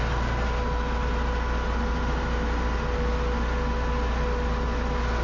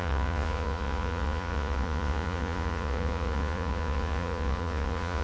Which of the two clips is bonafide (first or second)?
first